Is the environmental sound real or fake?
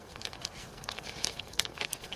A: fake